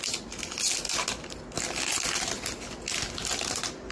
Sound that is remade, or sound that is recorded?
recorded